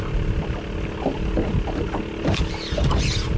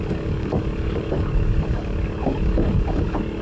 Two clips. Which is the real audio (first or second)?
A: first